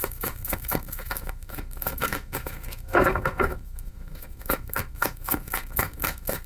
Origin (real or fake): fake